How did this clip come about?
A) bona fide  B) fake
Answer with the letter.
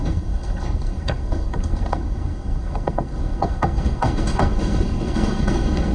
B